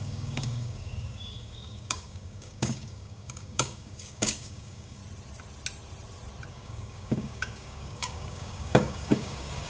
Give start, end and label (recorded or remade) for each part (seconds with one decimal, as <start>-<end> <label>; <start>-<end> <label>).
0.0-5.0 remade; 5.0-6.5 recorded; 6.5-9.7 remade